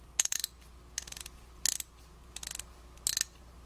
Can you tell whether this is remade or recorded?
recorded